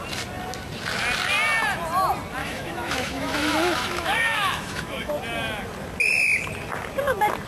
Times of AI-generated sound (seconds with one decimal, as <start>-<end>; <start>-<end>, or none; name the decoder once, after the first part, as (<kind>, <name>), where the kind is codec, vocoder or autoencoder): 2.4-5.1 (autoencoder, DAC-VAE)